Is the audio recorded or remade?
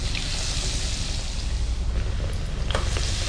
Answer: recorded